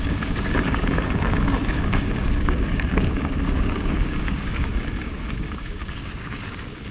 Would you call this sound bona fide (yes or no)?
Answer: no